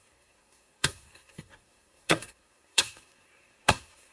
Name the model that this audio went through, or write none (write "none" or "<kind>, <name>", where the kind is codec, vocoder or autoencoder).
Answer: codec, SNAC